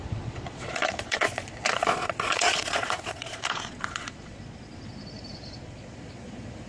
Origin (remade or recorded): remade